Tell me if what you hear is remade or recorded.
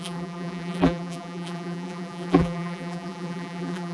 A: remade